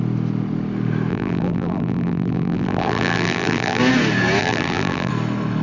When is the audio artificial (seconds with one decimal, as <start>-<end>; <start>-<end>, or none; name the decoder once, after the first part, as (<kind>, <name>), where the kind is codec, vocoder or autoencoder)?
1.1-3.8 (vocoder, BigVGAN v2); 4.4-5.1